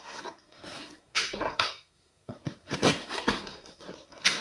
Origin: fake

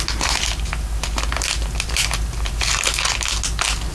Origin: real